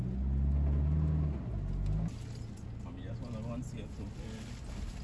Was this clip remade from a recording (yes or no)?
no